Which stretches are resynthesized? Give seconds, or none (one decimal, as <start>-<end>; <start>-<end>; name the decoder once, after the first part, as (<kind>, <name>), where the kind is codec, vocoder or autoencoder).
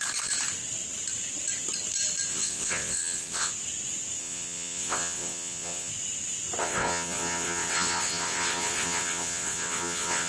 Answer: 2.3-3.5 (vocoder, WaveNeXt); 4.2-5.9; 6.6-10.3